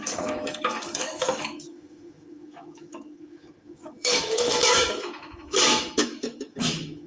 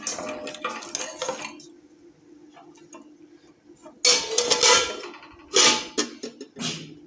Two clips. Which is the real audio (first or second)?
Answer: second